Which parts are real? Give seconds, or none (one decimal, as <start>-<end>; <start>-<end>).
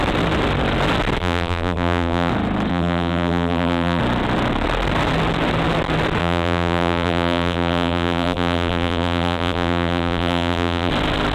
0.0-1.2; 2.3-2.7; 4.0-6.2; 10.9-11.3